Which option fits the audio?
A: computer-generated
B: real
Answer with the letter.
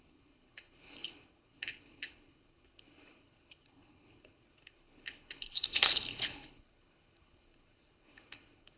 A